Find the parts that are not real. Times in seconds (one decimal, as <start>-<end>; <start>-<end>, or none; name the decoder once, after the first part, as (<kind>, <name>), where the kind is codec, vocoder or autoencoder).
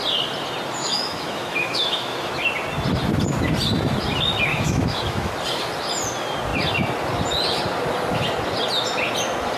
0.8-2.3 (autoencoder, DAC-VAE); 4.5-5.3